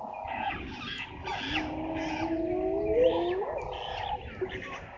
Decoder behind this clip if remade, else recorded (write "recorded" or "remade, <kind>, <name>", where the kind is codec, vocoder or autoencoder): recorded